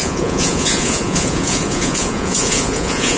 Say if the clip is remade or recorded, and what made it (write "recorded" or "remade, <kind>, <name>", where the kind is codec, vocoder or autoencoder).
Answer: remade, vocoder, Vocos